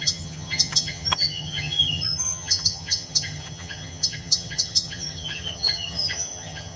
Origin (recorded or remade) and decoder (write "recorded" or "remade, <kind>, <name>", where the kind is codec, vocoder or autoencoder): remade, vocoder, HiFi-GAN